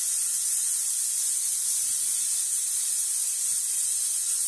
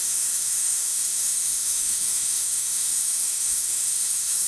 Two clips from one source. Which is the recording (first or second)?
first